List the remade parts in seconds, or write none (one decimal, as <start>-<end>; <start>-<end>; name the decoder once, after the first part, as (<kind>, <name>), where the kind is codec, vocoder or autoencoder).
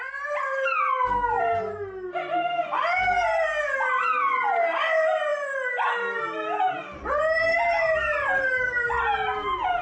none